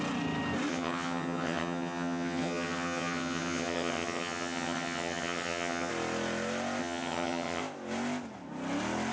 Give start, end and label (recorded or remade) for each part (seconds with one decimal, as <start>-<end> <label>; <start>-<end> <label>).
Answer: 0.0-0.7 recorded; 0.7-5.9 remade; 5.9-6.8 recorded; 6.8-7.6 remade; 7.6-9.1 recorded